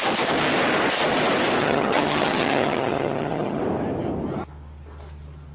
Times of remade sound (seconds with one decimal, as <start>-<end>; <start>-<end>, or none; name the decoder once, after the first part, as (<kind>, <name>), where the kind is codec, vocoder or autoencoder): 1.6-3.6 (vocoder, HiFi-GAN)